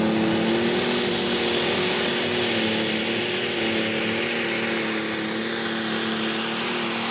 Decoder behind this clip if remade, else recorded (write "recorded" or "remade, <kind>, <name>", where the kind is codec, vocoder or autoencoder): recorded